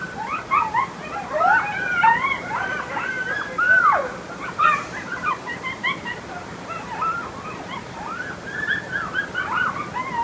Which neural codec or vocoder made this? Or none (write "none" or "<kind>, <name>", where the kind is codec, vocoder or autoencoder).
vocoder, BigVGAN v2